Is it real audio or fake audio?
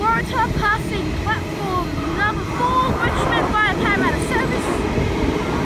real